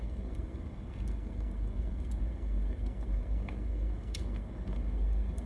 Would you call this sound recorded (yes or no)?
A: no